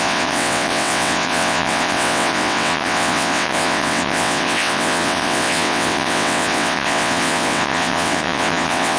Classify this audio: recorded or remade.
remade